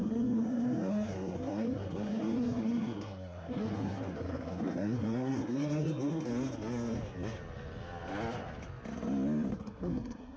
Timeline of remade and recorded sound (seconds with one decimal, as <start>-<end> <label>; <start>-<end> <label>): 0.0-6.3 remade; 6.3-9.5 recorded; 9.5-10.4 remade